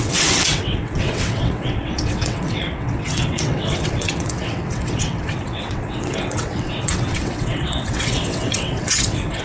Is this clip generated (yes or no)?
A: yes